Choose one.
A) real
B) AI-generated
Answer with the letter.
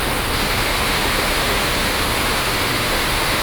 B